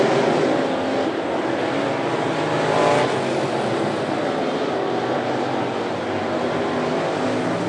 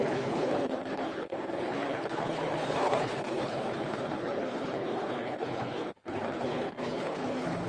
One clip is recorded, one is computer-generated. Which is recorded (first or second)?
first